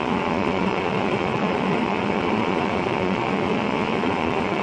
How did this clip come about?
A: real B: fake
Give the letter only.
B